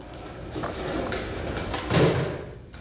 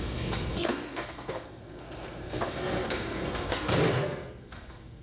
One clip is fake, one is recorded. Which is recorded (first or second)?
first